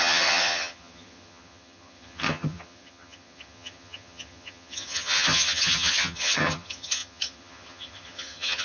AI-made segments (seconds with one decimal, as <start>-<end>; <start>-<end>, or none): 0.0-8.6